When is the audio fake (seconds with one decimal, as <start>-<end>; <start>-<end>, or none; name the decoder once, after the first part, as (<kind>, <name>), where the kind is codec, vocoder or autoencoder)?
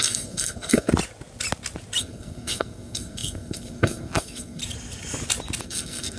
0.0-0.9 (codec, SNAC); 2.0-4.6; 5.6-6.2